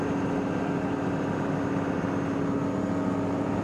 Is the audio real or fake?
real